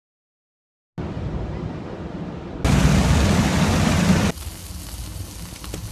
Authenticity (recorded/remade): recorded